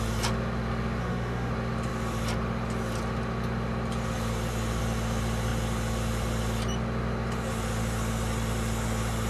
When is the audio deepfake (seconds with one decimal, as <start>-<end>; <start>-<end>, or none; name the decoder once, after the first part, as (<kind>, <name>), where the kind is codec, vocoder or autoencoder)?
1.0-1.5 (autoencoder, DAC-VAE)